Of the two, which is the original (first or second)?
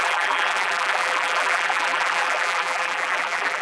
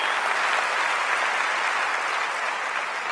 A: second